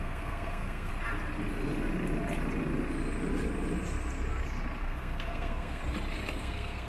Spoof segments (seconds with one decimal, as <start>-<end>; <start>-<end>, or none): 0.0-0.9; 4.8-5.8; 6.4-6.9